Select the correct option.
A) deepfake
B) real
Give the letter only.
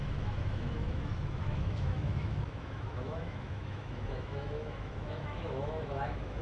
A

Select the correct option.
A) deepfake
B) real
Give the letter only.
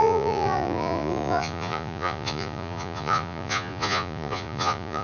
A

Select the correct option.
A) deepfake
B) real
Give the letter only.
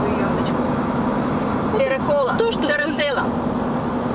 B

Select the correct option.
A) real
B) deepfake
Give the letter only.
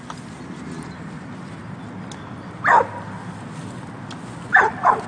A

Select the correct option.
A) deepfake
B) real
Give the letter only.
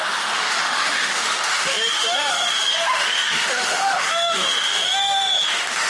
A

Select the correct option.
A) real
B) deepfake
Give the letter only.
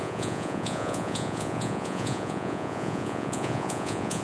B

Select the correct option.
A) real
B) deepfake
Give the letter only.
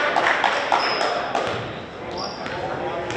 A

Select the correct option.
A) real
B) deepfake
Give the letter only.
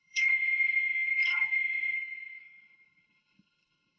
B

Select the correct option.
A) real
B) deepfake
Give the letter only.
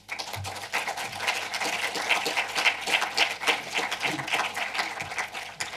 A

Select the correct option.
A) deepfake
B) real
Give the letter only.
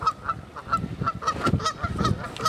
B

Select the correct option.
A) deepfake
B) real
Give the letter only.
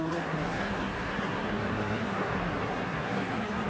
A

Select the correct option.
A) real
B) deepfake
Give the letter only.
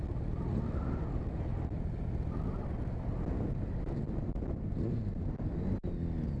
A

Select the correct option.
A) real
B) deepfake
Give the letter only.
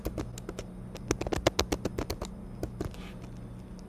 A